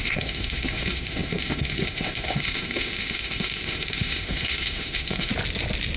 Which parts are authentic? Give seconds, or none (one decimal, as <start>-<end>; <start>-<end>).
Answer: 5.3-6.0